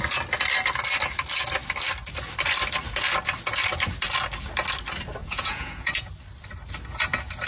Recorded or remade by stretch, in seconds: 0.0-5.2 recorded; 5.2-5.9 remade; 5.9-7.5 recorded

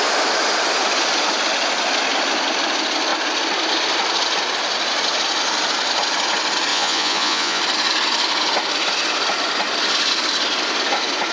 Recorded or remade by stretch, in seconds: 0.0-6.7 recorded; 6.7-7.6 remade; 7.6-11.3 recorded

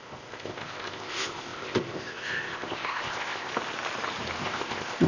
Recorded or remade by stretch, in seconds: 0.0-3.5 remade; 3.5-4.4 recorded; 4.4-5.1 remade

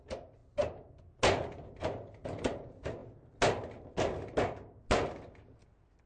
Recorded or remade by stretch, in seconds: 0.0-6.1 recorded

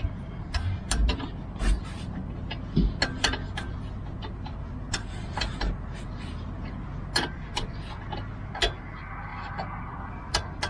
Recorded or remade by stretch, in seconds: 0.0-10.7 recorded

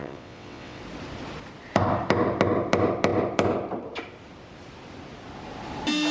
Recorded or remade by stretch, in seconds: 0.0-0.8 remade; 0.8-6.1 recorded

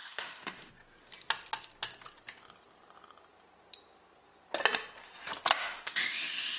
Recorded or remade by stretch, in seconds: 0.0-0.7 remade; 0.7-5.6 recorded; 5.6-6.6 remade

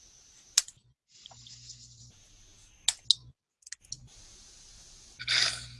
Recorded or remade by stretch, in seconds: 0.0-5.8 recorded